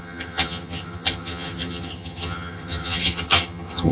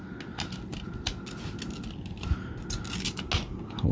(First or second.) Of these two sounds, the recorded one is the second